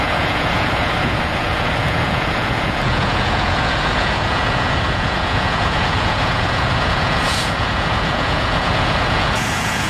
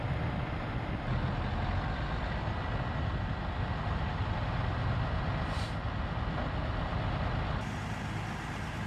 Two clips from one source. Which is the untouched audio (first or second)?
second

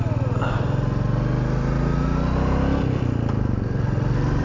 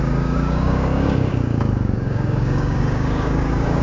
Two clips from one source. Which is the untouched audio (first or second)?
first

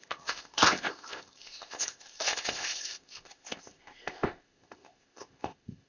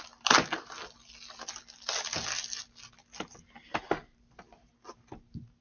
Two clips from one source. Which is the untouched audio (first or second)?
second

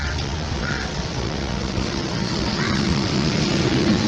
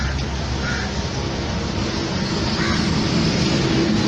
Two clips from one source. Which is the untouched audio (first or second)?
second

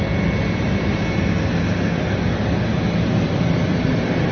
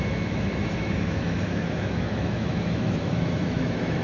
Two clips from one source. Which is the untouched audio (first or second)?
first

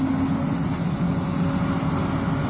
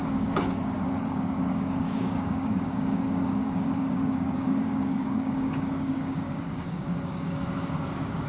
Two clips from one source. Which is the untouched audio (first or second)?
first